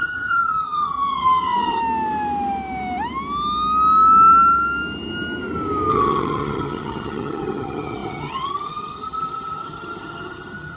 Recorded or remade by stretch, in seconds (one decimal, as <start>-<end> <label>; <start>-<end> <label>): 0.0-1.8 remade; 1.8-5.9 recorded; 5.9-10.8 remade